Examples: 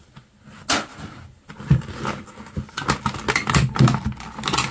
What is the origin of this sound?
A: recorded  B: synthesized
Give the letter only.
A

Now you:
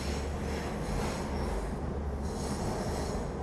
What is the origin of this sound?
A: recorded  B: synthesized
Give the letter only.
A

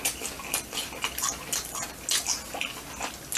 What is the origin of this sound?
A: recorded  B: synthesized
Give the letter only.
A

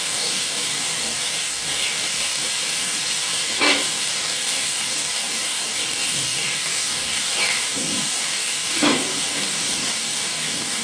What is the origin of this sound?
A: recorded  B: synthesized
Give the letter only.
B